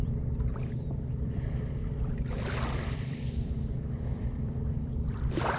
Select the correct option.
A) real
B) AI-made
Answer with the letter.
B